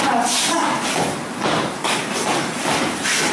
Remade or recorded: recorded